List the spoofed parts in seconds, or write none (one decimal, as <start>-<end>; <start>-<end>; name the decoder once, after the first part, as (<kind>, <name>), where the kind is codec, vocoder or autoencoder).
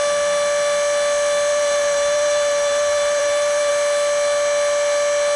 1.5-3.7 (vocoder, BigVGAN v2)